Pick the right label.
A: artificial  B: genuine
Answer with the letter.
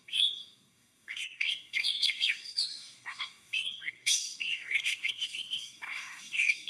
A